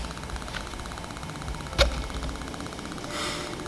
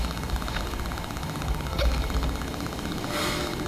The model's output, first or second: second